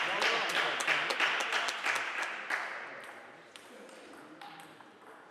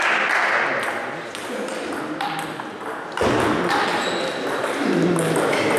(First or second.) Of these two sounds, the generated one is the first